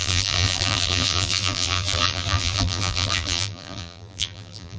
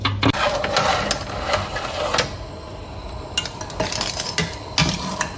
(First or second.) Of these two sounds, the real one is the second